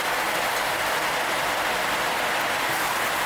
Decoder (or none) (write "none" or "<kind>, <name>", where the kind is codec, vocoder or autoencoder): none